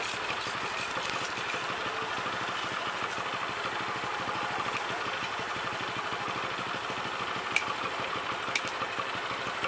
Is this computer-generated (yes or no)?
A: no